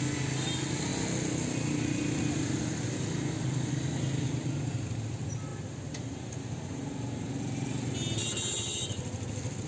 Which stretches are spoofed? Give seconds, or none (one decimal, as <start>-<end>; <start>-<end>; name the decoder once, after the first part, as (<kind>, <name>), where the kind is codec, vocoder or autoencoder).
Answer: none

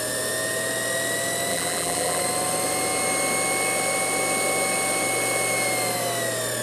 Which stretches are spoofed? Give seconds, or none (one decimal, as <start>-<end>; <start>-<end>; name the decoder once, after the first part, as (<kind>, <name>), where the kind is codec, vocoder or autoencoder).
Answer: 1.5-2.2 (vocoder, BigVGAN v2)